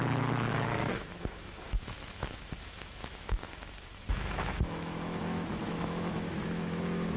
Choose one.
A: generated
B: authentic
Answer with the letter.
A